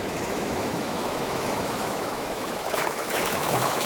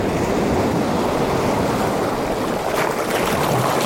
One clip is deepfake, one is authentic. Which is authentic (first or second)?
second